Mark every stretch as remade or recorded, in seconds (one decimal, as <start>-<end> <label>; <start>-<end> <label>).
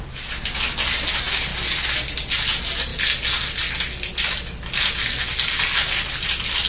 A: 0.0-6.7 recorded